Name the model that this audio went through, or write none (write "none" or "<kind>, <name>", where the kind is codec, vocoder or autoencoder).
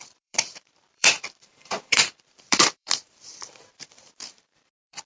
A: vocoder, BigVGAN v2